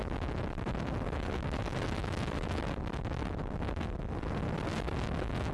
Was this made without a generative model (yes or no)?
no